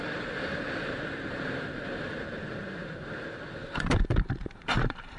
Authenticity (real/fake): fake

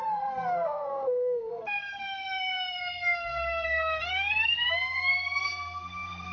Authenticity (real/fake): fake